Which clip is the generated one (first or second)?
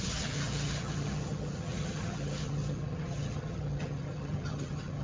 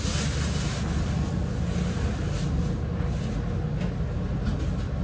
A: first